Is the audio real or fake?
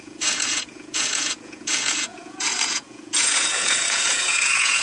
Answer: fake